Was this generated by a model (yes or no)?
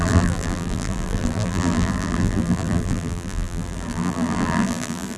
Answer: yes